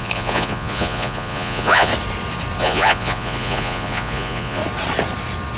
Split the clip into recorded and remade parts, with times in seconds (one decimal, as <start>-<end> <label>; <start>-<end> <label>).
0.0-1.9 remade; 1.9-2.6 recorded; 2.6-4.6 remade; 4.6-5.6 recorded